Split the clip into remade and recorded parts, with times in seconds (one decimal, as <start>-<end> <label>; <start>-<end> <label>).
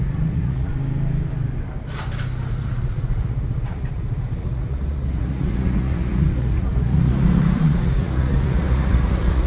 0.0-0.7 remade; 0.7-2.5 recorded; 2.5-9.5 remade